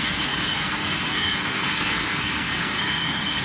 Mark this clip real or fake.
fake